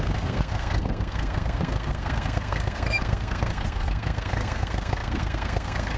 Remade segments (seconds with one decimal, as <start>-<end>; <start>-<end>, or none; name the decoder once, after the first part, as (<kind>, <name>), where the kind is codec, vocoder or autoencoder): 0.0-6.0 (codec, SNAC)